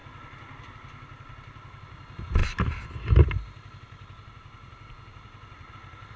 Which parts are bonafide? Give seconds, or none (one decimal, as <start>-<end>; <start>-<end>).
0.0-6.2